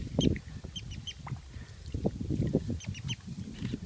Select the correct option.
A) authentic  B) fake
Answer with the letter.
A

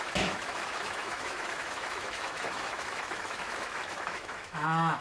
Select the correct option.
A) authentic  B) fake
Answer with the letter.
B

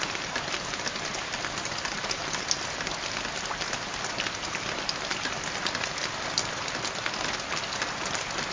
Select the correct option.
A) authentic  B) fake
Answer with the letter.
A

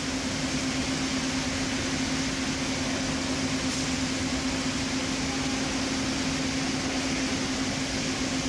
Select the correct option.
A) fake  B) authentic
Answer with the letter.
B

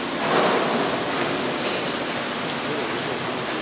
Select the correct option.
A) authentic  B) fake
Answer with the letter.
A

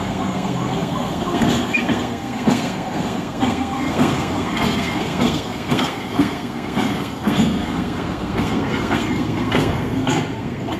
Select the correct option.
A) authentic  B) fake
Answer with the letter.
B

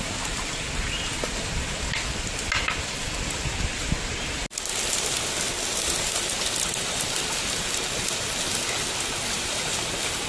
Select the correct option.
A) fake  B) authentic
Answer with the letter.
B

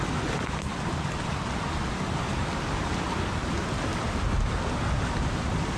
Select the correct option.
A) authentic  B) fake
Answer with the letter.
A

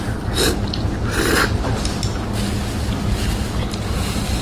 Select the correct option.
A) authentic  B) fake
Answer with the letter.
A